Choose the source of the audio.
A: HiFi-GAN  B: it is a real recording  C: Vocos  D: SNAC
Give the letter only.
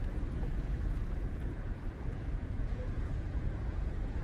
C